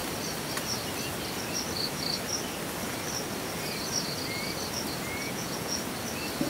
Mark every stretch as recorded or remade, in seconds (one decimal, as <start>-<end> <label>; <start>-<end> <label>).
0.0-5.2 recorded; 5.2-5.8 remade; 5.8-6.5 recorded